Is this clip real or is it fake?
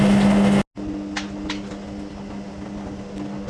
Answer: real